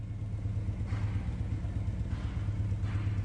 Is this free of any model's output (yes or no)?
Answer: yes